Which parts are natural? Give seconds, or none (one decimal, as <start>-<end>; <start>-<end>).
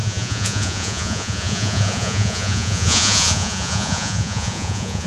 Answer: none